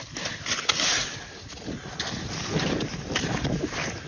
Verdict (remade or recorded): recorded